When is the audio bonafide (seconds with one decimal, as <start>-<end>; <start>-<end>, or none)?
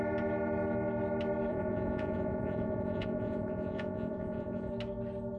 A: 0.0-1.5; 4.7-5.4